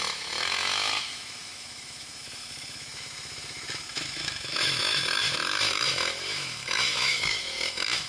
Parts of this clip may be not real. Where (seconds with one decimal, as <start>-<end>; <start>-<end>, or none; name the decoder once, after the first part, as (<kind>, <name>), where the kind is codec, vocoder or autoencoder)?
0.0-8.1 (autoencoder, DAC-VAE)